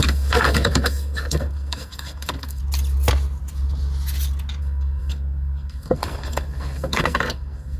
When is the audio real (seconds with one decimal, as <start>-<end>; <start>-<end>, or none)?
2.6-4.6